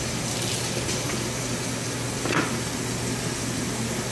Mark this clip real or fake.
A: real